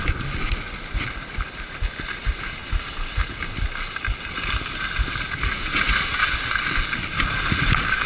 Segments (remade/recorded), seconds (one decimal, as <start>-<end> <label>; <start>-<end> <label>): 0.0-8.1 recorded